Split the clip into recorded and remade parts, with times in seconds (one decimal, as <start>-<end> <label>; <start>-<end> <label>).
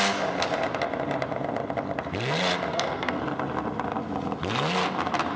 0.0-2.7 recorded; 2.7-3.2 remade; 3.2-5.4 recorded